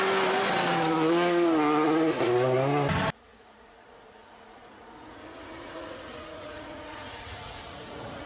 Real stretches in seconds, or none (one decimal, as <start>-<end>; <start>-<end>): 0.0-3.3